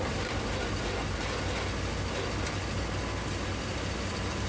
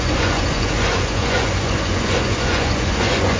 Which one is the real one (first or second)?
first